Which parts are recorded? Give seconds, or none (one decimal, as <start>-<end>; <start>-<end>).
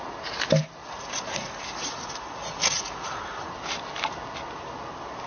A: 0.0-0.8; 3.5-5.3